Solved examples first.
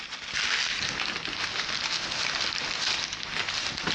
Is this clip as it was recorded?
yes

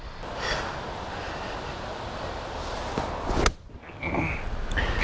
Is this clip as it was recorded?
yes